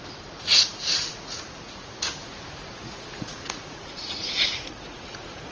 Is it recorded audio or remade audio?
remade